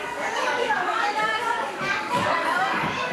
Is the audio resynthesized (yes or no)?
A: yes